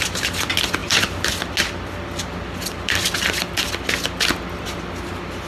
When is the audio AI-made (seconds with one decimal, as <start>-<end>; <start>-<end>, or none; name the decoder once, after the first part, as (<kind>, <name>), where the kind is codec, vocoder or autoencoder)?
none